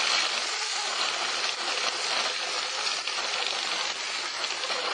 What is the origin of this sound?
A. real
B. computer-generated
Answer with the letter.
A